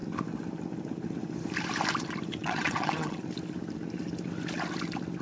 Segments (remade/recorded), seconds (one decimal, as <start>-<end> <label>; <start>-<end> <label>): 0.0-2.4 recorded; 2.4-3.2 remade; 3.2-5.2 recorded